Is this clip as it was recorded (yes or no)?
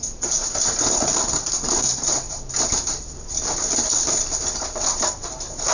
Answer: yes